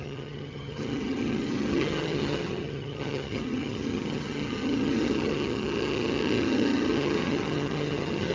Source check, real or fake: fake